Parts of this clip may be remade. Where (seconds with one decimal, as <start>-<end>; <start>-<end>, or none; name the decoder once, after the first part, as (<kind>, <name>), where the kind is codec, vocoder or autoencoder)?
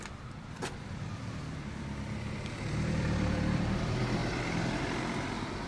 0.0-4.2 (vocoder, BigVGAN v2); 5.3-5.7